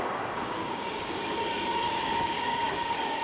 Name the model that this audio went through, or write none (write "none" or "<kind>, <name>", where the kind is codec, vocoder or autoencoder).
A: codec, DAC